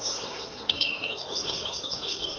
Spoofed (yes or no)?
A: yes